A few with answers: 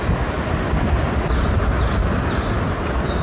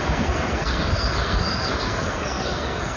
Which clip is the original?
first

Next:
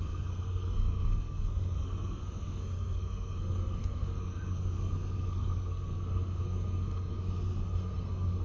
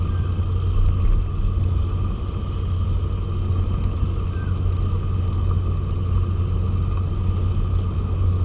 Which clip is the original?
second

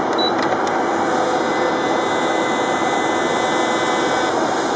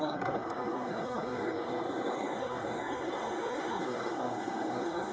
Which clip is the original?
first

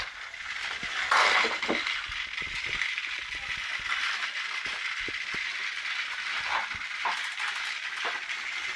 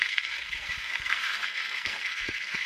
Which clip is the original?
first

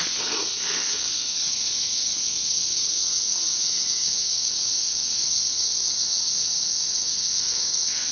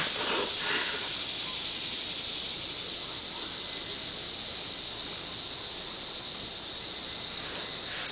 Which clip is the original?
second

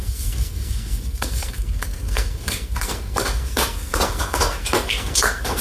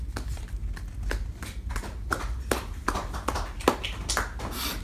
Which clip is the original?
second